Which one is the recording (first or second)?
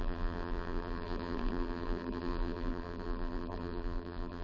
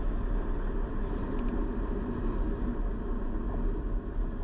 second